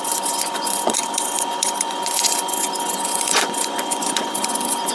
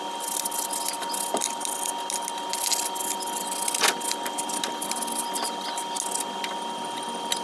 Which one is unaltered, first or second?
second